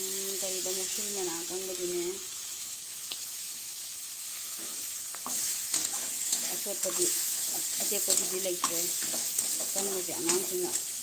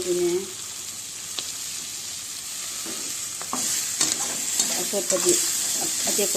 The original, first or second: second